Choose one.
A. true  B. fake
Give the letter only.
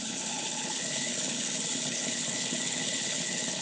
B